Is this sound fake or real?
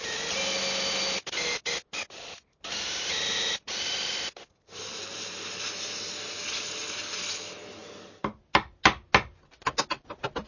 real